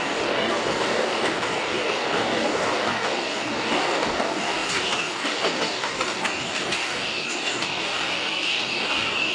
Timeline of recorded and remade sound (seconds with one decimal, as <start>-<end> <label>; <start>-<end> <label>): 0.0-9.3 remade